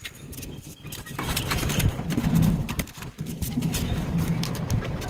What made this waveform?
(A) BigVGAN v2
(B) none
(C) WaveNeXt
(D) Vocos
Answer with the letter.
A